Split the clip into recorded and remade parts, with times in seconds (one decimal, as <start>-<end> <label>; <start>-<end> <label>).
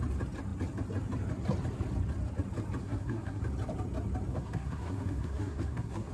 0.0-2.8 recorded; 2.8-3.4 remade; 3.4-4.3 recorded; 4.3-6.1 remade